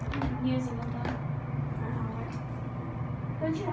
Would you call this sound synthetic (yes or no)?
no